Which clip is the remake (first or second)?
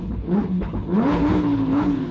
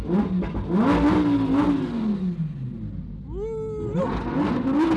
first